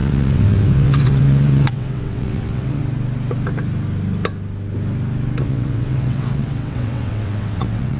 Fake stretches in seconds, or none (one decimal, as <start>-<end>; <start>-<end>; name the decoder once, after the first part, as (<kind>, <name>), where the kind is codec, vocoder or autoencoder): 0.0-2.8 (vocoder, WaveNeXt); 5.4-8.0